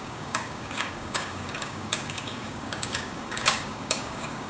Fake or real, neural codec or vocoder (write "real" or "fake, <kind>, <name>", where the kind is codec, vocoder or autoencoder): fake, codec, DAC